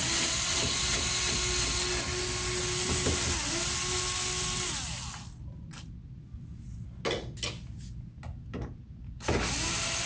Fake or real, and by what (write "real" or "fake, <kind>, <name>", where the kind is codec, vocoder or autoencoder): real